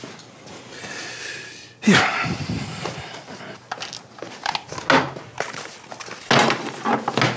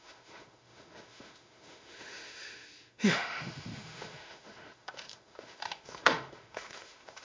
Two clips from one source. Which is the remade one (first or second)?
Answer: second